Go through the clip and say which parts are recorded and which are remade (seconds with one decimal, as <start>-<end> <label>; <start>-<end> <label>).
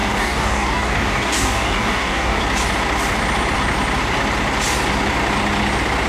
0.0-2.4 remade; 2.4-6.1 recorded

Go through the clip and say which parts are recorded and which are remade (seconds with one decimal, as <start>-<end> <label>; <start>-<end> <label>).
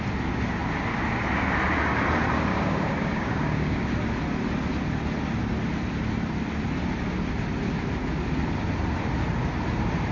0.0-2.5 recorded; 2.5-3.9 remade; 3.9-10.1 recorded